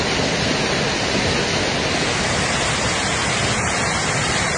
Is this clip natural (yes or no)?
yes